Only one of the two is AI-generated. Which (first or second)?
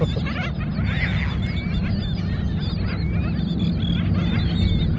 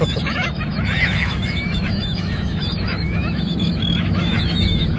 second